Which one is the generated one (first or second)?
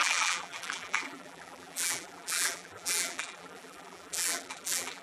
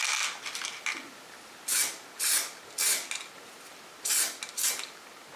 first